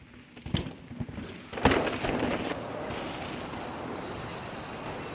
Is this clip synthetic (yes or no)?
no